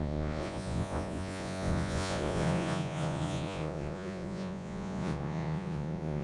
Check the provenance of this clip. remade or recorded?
remade